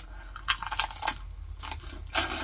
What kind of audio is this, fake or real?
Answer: real